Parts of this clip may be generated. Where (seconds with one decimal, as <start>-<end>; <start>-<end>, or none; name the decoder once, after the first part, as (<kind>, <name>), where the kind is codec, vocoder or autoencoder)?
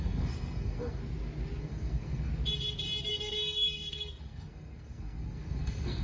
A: 0.0-1.0 (codec, SNAC); 1.6-2.3; 3.1-6.0